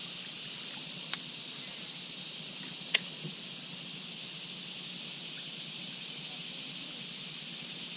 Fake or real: real